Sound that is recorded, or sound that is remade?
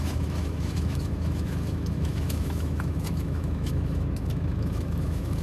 remade